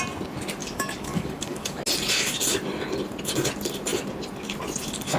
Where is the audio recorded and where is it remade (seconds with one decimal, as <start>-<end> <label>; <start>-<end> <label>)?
0.0-0.6 recorded; 0.6-1.8 remade; 1.8-5.2 recorded